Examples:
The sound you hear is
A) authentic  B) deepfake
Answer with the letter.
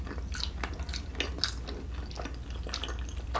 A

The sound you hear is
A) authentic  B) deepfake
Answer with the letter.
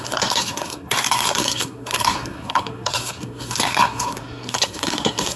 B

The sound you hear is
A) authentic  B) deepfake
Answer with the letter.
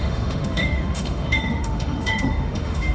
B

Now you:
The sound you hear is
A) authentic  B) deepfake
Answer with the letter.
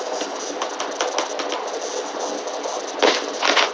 A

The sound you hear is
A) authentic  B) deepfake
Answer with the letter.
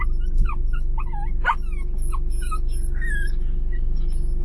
A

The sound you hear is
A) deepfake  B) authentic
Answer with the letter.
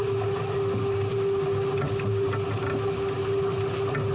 B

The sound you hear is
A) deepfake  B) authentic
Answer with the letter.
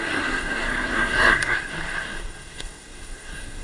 A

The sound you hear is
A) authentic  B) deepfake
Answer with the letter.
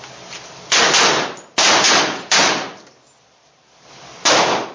A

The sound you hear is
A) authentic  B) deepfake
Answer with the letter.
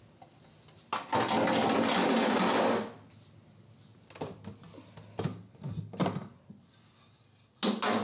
A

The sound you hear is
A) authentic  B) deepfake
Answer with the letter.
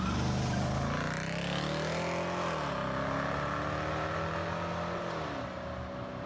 A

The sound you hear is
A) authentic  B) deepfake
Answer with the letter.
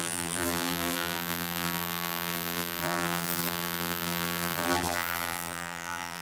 B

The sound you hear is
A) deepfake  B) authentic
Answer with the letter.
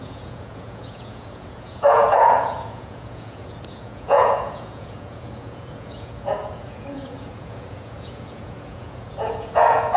A